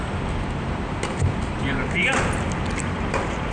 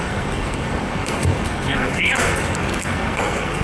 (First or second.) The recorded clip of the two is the first